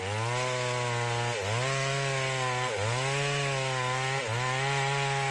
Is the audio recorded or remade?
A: recorded